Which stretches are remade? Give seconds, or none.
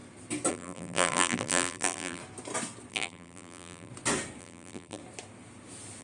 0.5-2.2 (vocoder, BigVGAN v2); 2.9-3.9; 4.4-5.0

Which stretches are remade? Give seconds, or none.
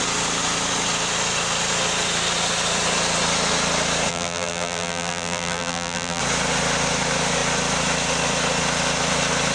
4.1-6.2 (vocoder, BigVGAN v2)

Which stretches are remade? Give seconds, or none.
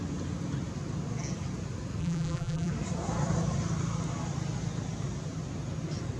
2.0-2.7 (vocoder, BigVGAN v2)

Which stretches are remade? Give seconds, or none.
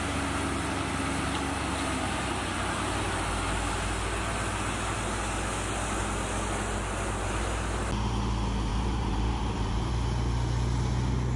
8.7-9.9 (vocoder, BigVGAN v2)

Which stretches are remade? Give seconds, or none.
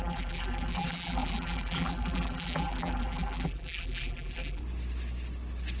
0.0-4.6 (vocoder, BigVGAN v2)